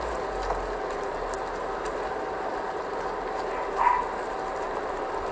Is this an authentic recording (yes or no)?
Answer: yes